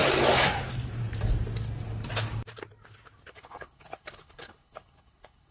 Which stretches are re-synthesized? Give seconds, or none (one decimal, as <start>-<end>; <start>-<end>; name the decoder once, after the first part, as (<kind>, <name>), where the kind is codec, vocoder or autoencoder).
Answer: 3.3-5.5 (codec, HILCodec)